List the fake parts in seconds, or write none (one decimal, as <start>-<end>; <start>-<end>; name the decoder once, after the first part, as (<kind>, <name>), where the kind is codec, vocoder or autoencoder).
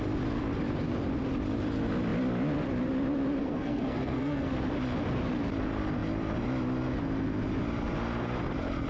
3.4-4.5 (codec, SNAC)